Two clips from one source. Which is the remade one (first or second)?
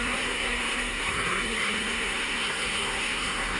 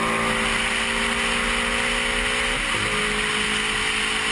first